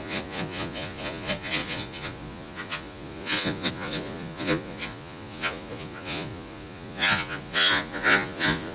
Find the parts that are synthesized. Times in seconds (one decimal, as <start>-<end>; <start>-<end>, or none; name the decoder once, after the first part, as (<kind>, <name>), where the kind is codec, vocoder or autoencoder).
0.0-8.7 (vocoder, Vocos)